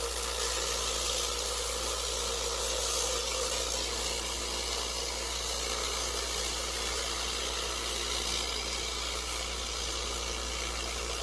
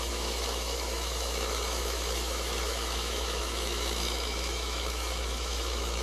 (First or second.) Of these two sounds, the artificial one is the second